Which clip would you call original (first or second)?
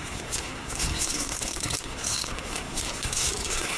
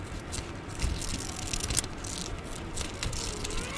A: second